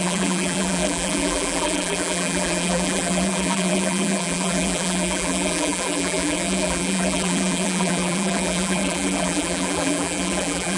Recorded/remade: remade